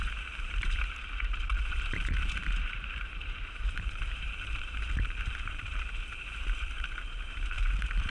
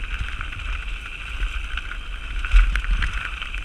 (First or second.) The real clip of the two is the second